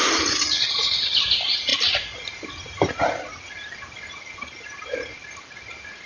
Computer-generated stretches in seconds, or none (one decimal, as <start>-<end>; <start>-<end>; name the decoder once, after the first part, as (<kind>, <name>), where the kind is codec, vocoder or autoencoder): none